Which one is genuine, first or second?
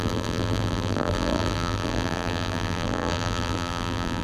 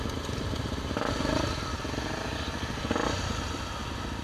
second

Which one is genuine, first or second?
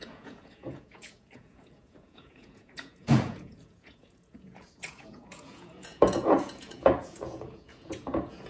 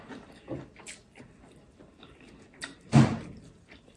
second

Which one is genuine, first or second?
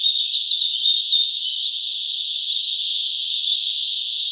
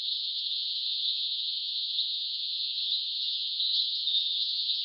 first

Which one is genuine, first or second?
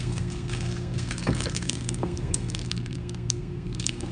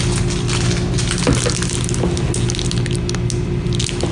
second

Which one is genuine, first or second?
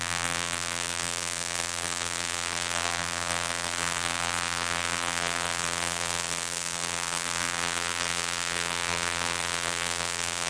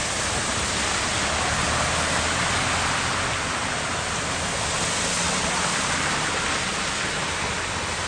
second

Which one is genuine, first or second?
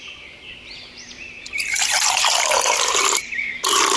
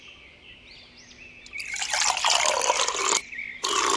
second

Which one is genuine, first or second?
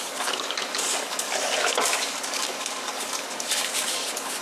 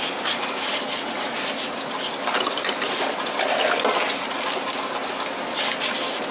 second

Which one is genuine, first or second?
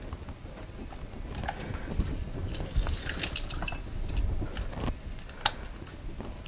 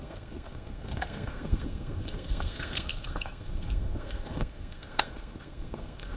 first